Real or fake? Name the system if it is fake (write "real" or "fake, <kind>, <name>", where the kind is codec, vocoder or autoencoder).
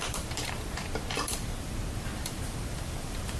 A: fake, vocoder, BigVGAN v2